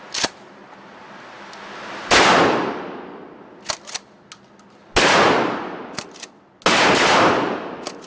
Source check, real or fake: real